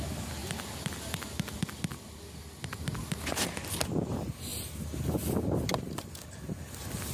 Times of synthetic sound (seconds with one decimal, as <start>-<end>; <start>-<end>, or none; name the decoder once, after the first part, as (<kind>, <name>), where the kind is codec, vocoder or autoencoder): none